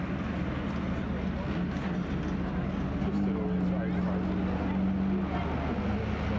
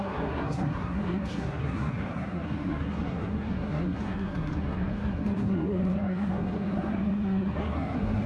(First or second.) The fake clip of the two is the second